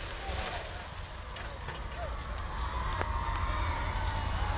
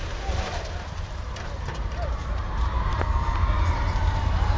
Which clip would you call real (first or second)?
first